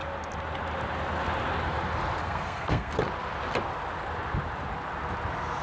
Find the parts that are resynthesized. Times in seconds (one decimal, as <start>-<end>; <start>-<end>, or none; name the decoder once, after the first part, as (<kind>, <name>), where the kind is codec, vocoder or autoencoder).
2.2-2.9 (codec, SNAC)